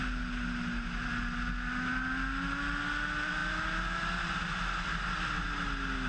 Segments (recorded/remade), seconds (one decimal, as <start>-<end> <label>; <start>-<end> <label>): 0.0-6.1 recorded